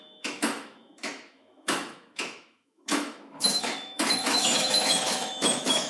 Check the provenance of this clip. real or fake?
fake